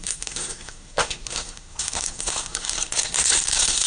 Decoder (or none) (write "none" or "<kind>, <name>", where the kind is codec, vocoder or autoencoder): codec, SNAC